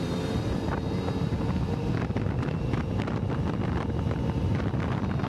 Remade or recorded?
remade